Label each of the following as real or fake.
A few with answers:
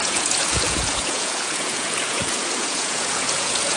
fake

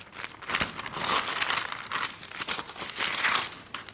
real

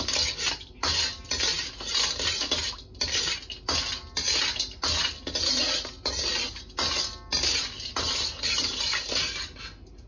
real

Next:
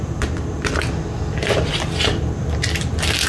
real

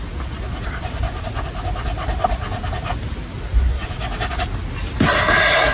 real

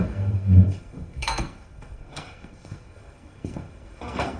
fake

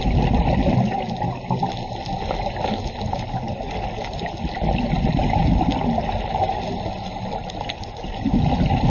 real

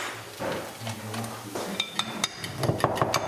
real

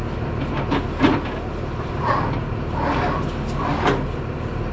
real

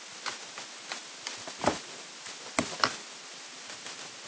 real